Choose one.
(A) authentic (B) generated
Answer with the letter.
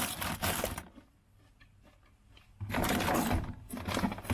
A